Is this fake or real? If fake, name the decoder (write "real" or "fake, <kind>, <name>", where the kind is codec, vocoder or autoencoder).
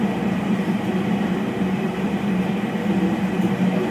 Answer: real